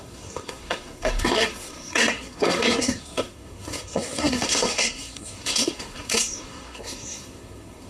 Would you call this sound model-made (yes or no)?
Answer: yes